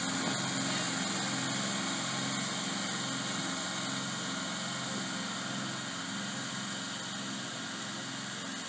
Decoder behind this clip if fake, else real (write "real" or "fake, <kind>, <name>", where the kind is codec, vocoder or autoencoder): real